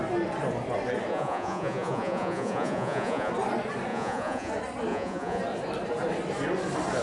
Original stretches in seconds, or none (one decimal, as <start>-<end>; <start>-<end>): 0.0-1.1; 3.3-3.9; 4.5-4.9; 5.4-7.0